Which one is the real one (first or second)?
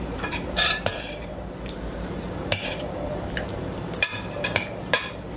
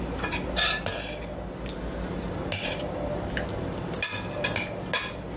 second